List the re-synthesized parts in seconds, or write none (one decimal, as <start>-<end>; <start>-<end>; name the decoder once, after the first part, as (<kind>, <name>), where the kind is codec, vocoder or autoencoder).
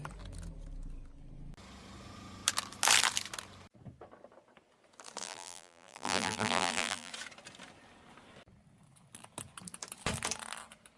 5.2-7.1 (vocoder, BigVGAN v2)